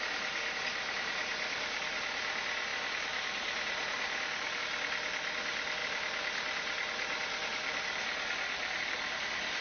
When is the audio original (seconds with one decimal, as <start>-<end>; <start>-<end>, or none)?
0.0-2.7; 4.6-9.6